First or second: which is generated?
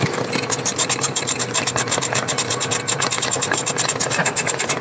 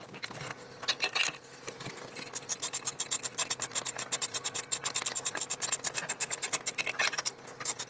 first